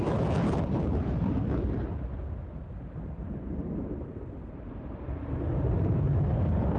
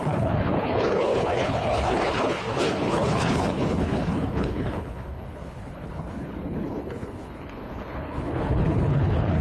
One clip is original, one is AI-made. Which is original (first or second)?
first